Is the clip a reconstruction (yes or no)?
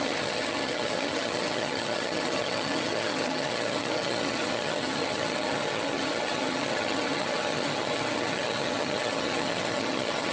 yes